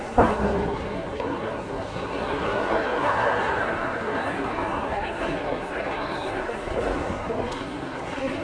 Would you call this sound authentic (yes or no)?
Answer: no